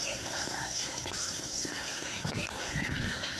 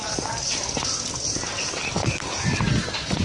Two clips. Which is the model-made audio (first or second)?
first